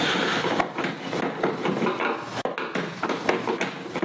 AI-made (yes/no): no